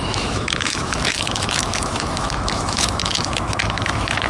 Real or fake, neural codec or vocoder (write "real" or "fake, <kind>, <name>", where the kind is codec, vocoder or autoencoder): fake, autoencoder, DAC-VAE